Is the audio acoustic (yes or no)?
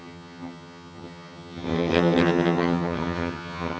no